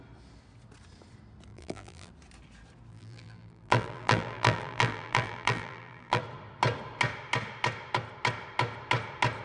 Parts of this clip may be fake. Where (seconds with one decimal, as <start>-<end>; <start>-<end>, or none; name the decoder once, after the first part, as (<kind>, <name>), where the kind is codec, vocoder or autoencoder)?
1.5-2.1 (vocoder, BigVGAN v2); 2.9-6.2